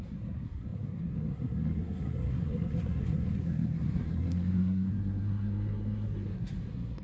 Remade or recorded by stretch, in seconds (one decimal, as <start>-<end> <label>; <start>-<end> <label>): 0.0-7.0 remade